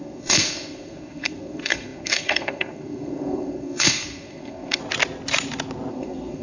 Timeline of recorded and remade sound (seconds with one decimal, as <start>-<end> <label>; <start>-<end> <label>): 0.0-4.8 remade; 4.8-5.9 recorded; 5.9-6.4 remade